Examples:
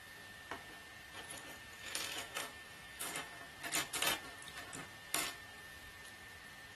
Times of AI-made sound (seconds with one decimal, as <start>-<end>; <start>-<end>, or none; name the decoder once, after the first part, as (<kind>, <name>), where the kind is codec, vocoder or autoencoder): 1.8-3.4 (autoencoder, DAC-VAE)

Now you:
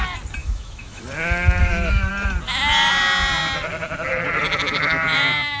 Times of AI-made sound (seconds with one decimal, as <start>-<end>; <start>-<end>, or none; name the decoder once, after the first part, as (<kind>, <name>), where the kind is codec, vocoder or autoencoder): 0.4-1.0 (autoencoder, DAC-VAE); 1.6-2.1

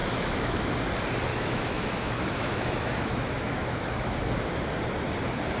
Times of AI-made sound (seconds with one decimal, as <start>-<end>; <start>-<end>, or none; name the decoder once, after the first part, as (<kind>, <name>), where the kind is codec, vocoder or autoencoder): 0.0-0.7 (autoencoder, DAC-VAE); 1.3-4.2

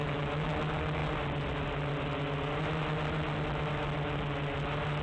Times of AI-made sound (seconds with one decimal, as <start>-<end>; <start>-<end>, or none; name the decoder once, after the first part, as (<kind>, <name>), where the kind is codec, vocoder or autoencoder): 0.0-0.5 (autoencoder, DAC-VAE)

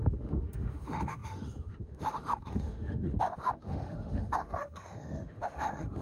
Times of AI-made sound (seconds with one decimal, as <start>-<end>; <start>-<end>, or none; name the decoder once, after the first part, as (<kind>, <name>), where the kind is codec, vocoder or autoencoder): 0.0-6.0 (autoencoder, DAC-VAE)

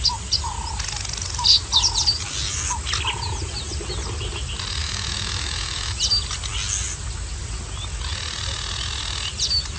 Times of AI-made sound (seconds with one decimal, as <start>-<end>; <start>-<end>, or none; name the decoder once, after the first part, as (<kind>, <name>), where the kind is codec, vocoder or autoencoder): 4.8-6.0 (autoencoder, DAC-VAE)

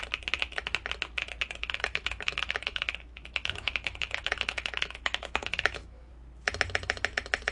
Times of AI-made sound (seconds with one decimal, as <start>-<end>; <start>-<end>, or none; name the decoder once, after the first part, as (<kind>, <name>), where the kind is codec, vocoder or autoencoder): 1.6-6.1 (autoencoder, DAC-VAE)

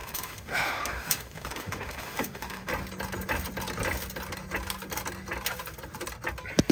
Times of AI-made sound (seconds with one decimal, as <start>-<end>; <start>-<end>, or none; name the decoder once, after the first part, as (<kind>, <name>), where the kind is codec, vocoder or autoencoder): 0.0-2.7 (autoencoder, DAC-VAE)